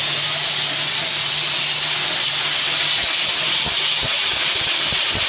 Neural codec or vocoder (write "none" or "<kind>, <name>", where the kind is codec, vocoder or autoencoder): none